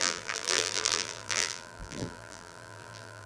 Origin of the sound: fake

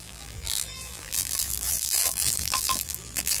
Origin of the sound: fake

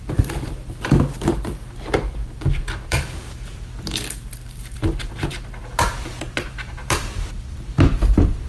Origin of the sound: fake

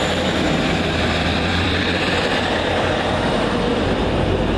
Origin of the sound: fake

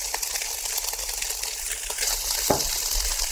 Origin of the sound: real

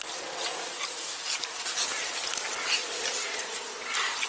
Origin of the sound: real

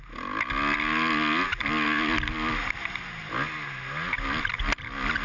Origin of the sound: real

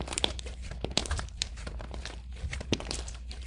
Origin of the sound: fake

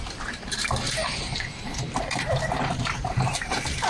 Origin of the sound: fake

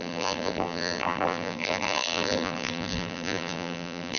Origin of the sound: fake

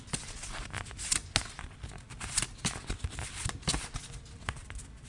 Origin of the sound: real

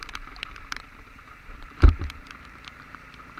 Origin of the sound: fake